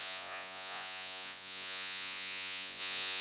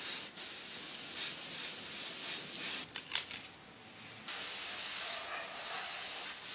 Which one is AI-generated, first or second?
first